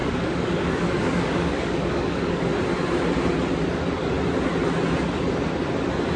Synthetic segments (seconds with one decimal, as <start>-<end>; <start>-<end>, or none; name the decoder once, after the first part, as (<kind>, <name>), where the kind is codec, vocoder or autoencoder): 0.0-2.5 (codec, DAC)